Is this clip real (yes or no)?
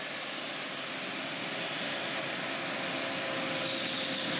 yes